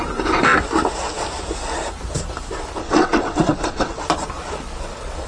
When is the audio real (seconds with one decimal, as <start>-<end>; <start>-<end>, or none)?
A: 0.0-2.8; 4.0-5.3